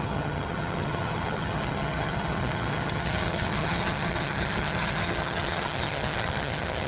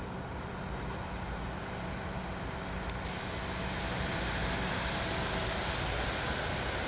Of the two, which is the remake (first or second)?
first